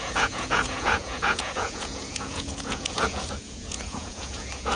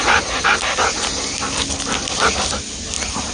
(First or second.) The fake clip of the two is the first